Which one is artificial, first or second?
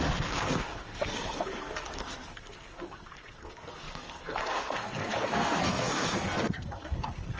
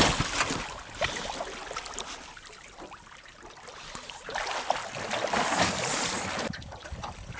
first